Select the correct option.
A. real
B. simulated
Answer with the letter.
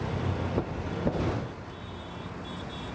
A